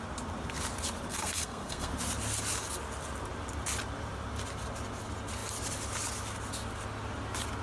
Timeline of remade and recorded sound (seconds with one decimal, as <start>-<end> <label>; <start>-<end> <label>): 0.0-1.1 recorded; 1.1-1.9 remade; 1.9-7.6 recorded